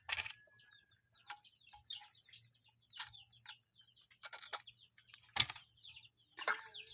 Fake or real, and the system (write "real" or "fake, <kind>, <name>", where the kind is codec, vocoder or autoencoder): real